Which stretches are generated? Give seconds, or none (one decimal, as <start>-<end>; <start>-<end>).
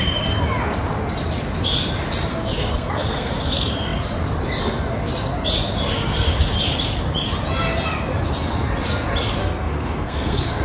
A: 2.3-3.3; 9.4-10.6